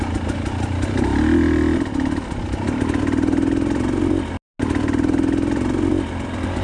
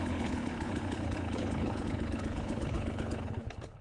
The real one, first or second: first